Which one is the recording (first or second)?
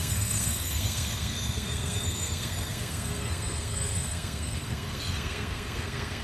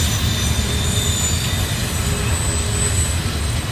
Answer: second